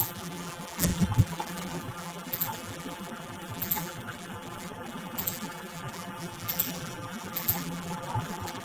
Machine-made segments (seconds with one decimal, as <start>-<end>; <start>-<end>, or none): 0.0-8.6